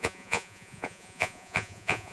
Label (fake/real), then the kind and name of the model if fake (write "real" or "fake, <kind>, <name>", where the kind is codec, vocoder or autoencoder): fake, vocoder, Vocos